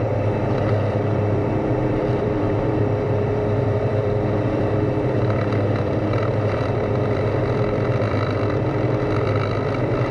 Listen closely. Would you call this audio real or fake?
fake